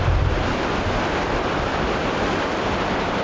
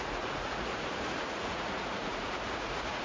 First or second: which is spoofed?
second